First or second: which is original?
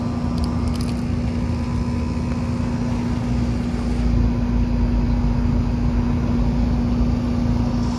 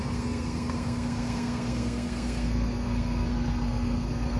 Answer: first